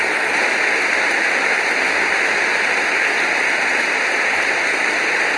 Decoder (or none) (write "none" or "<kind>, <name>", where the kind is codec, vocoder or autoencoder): none